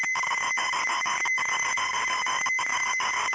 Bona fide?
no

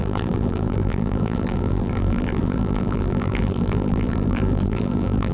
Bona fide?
no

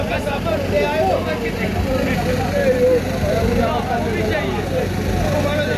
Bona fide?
yes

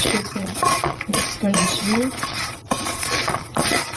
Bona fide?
no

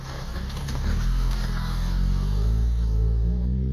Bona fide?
no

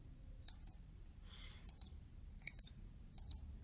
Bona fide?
no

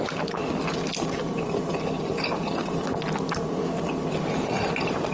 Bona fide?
yes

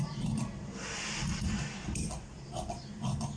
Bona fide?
yes